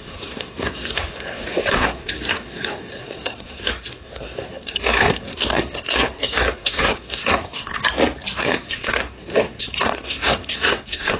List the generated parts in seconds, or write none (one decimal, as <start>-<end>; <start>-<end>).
0.0-7.8; 8.4-11.2